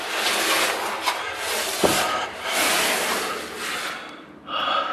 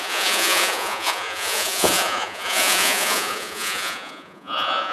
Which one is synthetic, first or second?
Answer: second